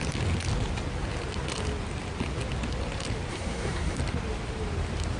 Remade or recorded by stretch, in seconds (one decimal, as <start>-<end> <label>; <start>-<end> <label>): 0.0-3.3 recorded; 3.3-4.0 remade; 4.0-5.2 recorded